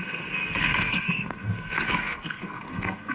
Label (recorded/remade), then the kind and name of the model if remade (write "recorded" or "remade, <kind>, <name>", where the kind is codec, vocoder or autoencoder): remade, codec, SNAC